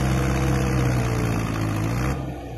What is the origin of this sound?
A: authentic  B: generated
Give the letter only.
A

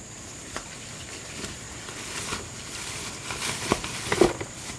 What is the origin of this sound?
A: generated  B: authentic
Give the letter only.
B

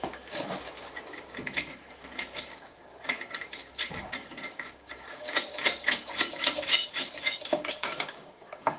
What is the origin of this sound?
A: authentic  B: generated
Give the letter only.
B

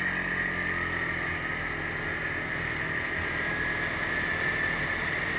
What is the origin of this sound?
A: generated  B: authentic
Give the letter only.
B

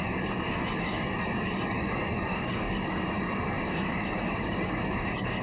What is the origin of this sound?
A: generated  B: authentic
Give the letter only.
A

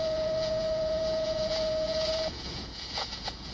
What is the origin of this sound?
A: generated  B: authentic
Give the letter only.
A